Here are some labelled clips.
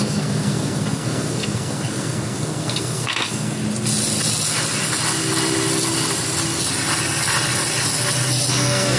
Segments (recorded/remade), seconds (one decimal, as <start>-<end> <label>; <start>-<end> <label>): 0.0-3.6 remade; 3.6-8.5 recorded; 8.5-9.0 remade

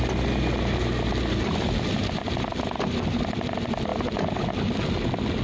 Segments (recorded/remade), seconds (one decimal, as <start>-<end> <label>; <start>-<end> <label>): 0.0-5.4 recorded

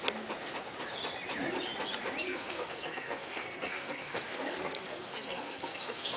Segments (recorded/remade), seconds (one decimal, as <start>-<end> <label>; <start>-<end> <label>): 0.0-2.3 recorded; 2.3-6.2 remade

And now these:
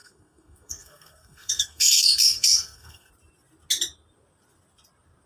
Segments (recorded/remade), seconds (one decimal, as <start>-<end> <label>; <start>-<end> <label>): 0.0-3.1 remade; 3.1-5.3 recorded

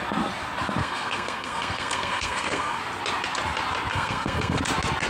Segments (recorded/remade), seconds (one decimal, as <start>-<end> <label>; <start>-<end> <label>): 0.0-0.8 recorded; 0.8-2.8 remade; 2.8-3.9 recorded; 3.9-4.6 remade; 4.6-5.1 recorded

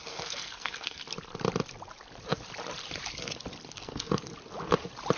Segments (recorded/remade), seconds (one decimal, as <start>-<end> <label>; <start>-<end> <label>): 0.0-1.0 remade; 1.0-3.7 recorded; 3.7-4.3 remade; 4.3-5.2 recorded